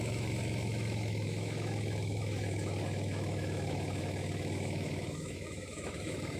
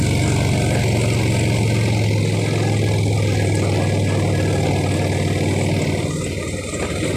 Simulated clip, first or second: first